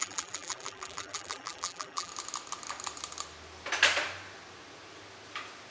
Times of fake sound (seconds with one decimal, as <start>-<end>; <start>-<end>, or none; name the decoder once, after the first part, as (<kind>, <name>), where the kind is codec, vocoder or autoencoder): 0.0-2.1 (vocoder, BigVGAN v2)